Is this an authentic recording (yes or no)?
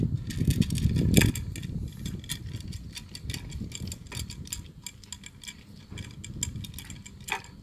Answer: yes